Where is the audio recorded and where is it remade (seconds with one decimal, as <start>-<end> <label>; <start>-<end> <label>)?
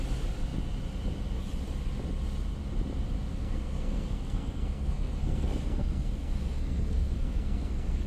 0.0-3.3 recorded; 3.3-8.1 remade